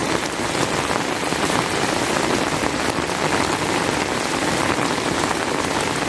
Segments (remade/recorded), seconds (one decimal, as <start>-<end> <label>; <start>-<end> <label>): 0.0-6.1 recorded